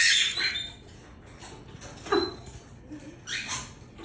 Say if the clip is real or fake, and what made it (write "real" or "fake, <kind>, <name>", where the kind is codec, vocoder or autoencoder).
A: real